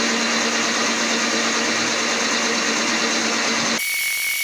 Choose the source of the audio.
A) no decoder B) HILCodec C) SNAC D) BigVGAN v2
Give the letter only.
A